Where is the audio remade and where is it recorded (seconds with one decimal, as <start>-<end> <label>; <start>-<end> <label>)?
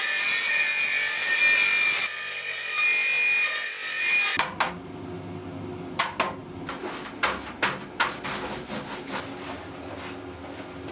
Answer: 0.0-10.9 recorded